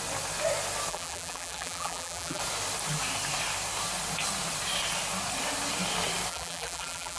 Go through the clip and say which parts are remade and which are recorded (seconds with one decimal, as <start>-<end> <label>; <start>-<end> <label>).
0.0-0.9 recorded; 0.9-2.4 remade; 2.4-6.3 recorded; 6.3-7.2 remade